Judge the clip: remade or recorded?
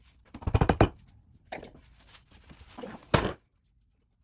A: recorded